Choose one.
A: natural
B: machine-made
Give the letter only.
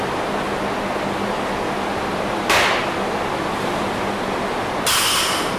A